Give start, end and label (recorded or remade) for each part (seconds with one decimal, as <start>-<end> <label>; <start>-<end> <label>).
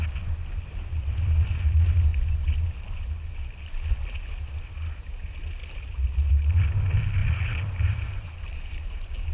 0.0-7.2 recorded; 7.2-8.6 remade; 8.6-9.3 recorded